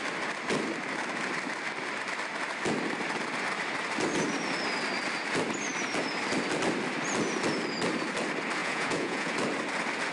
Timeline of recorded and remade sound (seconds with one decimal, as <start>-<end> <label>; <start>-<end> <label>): 0.0-8.6 recorded; 8.6-9.3 remade; 9.3-10.1 recorded